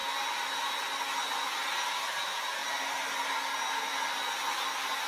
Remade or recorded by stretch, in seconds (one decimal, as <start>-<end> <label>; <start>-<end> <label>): 0.0-5.1 recorded